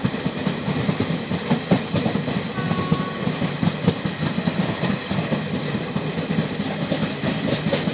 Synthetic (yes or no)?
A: no